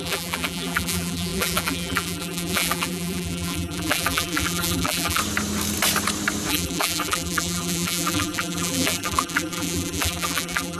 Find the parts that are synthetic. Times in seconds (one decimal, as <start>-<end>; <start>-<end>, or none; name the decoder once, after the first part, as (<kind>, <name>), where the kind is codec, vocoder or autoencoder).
0.0-5.2 (vocoder, BigVGAN v2); 6.5-10.8